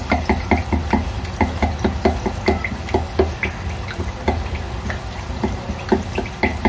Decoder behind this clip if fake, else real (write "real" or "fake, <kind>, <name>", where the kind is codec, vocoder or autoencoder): real